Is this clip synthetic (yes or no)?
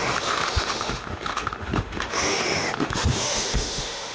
yes